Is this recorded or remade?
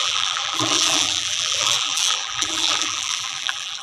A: remade